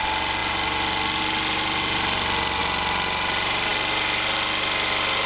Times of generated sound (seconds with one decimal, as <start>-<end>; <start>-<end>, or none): none